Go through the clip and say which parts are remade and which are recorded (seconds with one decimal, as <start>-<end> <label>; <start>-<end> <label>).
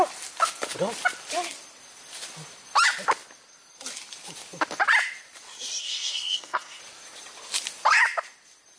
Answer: 0.0-5.8 recorded; 5.8-6.8 remade; 6.8-8.8 recorded